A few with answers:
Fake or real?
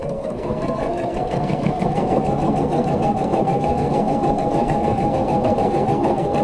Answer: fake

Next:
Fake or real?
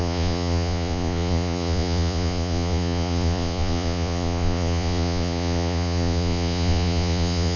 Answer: fake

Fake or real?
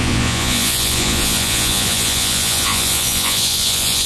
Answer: fake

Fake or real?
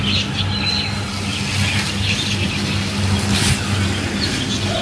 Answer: real